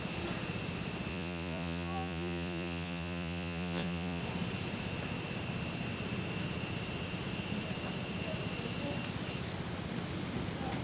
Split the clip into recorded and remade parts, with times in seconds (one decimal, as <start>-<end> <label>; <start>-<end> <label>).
0.0-1.1 recorded; 1.1-4.2 remade; 4.2-10.8 recorded

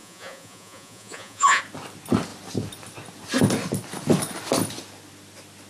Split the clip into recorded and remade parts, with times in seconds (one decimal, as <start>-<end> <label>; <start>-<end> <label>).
0.0-1.6 remade; 1.6-5.7 recorded

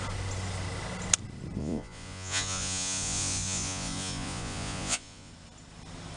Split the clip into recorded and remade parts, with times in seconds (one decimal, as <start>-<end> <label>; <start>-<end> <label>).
0.0-1.6 recorded; 1.6-5.3 remade; 5.3-6.2 recorded

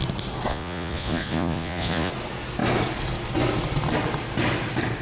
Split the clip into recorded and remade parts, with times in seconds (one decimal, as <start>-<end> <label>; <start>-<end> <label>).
0.0-0.5 recorded; 0.5-2.1 remade; 2.1-5.0 recorded